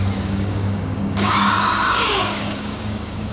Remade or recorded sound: remade